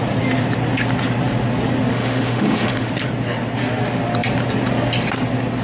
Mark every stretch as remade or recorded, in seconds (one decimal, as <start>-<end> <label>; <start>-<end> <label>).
0.0-1.9 recorded; 1.9-2.9 remade; 2.9-5.6 recorded